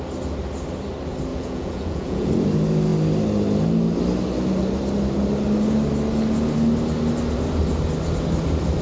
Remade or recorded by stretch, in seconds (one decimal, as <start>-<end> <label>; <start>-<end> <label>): 0.0-1.3 recorded; 1.3-2.3 remade; 2.3-8.8 recorded